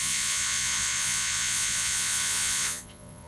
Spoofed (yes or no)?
yes